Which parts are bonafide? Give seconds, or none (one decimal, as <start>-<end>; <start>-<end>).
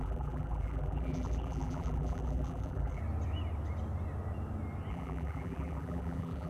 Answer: 3.0-4.9